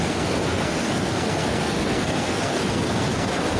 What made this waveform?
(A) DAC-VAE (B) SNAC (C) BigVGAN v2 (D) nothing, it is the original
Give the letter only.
B